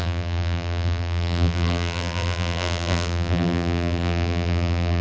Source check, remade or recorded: remade